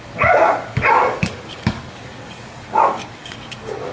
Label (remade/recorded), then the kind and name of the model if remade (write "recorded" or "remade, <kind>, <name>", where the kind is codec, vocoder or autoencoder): remade, codec, DAC